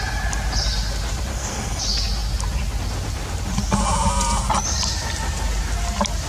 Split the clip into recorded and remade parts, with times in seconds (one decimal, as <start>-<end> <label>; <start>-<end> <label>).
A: 0.0-1.3 recorded; 1.3-1.8 remade; 1.8-6.3 recorded